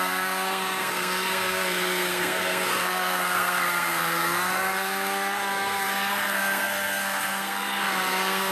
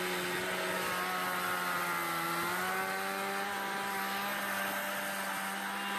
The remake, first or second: first